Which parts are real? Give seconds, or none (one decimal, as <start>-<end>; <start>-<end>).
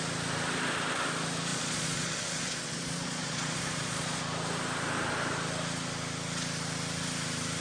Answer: 0.0-1.5; 4.2-7.6